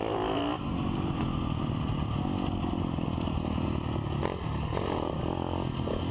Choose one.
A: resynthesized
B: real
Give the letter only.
B